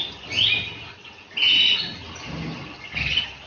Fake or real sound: real